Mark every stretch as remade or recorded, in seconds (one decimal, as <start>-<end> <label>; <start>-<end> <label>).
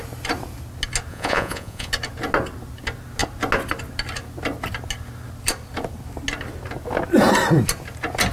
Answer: 0.0-1.1 recorded; 1.1-1.9 remade; 1.9-8.3 recorded